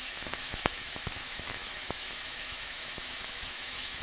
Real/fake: fake